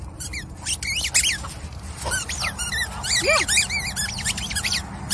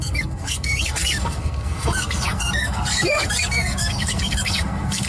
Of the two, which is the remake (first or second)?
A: second